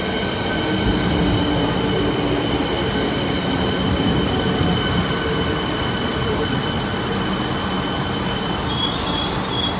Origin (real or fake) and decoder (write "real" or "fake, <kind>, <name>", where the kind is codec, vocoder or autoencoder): real